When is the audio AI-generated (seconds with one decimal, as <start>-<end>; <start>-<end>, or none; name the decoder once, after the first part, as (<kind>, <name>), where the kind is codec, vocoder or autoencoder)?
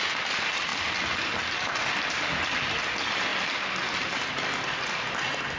none